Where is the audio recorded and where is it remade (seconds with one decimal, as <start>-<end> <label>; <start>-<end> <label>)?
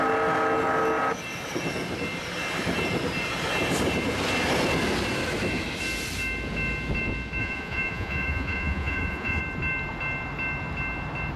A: 0.0-7.4 recorded; 7.4-9.4 remade; 9.4-11.4 recorded